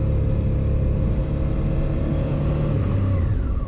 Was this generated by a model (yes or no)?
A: no